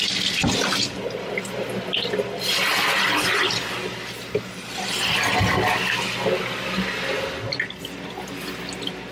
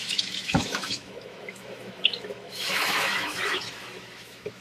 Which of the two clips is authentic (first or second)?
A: first